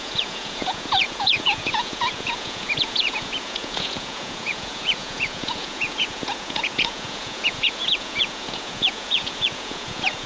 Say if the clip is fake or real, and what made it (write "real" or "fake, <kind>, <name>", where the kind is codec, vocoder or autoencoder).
fake, vocoder, Vocos